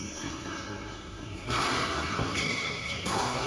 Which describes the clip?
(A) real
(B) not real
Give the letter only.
B